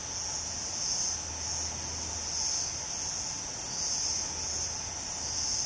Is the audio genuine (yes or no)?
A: yes